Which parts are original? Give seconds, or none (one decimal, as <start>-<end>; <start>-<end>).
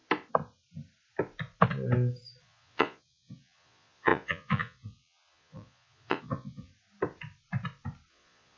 0.0-2.4; 6.7-8.1